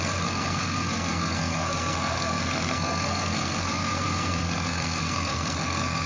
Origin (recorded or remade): remade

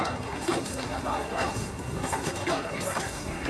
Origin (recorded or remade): remade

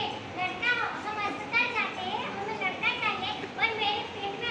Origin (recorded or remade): recorded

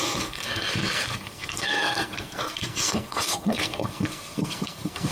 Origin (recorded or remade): remade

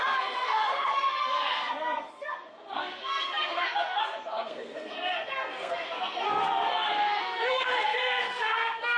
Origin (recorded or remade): remade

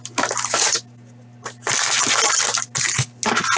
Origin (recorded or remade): recorded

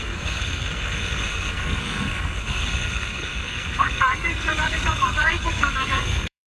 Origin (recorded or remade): remade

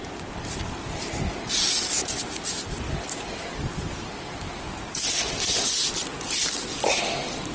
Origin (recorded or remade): recorded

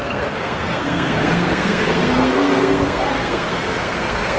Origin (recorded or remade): remade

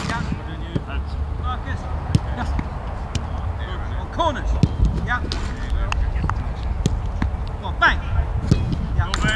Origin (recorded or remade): recorded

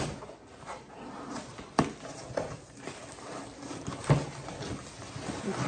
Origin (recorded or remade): recorded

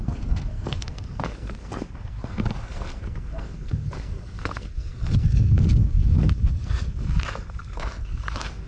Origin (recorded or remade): remade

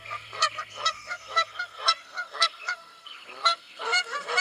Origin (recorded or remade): remade